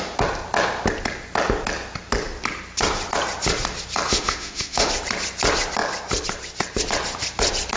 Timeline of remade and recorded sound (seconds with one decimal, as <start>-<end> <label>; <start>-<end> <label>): 0.0-4.1 recorded; 4.1-4.9 remade; 4.9-7.8 recorded